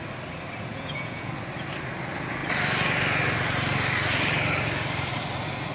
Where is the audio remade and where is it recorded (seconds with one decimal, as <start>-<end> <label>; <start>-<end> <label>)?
0.0-0.7 recorded; 0.7-1.3 remade; 1.3-5.7 recorded